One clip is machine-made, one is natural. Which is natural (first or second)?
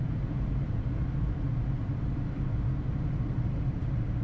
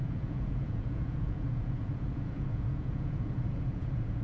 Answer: first